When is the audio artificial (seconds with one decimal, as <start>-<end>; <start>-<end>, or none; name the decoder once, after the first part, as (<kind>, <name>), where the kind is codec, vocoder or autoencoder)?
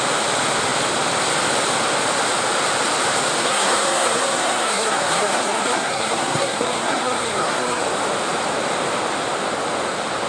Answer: 3.4-7.8 (codec, SNAC)